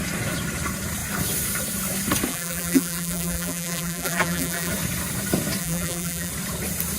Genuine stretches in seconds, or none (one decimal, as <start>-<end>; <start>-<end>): 0.0-2.3; 4.7-5.6; 6.3-7.0